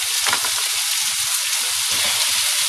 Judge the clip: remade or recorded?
recorded